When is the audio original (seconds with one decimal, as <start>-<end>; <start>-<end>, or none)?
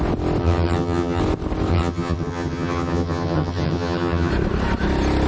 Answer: 0.0-0.4; 1.2-1.7; 4.3-5.3